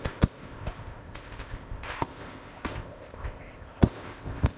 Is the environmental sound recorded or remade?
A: remade